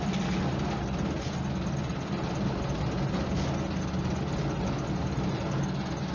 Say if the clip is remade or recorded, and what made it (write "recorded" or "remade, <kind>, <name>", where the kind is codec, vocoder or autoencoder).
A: recorded